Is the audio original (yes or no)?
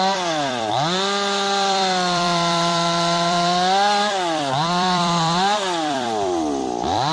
no